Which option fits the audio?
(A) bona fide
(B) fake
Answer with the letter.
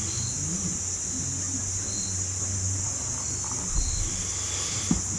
A